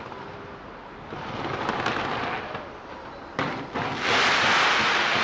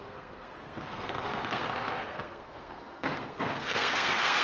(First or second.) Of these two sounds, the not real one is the second